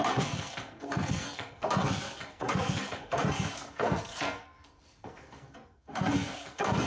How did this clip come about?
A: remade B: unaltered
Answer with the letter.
A